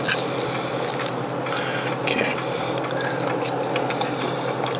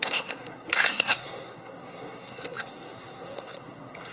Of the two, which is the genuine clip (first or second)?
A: first